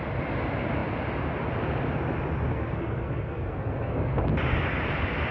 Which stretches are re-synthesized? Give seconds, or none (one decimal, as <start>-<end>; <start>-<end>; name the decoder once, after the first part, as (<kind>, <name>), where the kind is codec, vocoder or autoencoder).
2.5-4.1 (codec, SNAC)